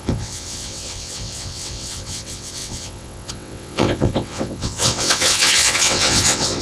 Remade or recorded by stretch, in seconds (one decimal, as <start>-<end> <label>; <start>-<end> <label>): 0.0-6.6 remade